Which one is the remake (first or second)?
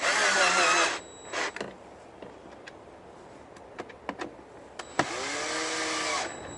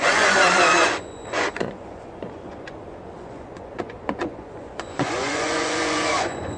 second